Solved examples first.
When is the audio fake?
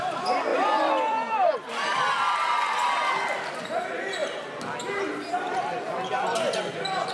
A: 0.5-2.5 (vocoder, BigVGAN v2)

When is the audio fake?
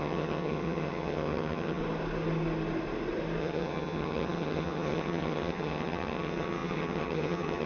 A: 0.0-1.8 (vocoder, HiFi-GAN); 3.4-7.7